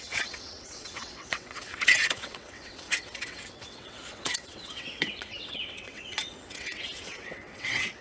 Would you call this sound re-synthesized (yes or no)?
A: yes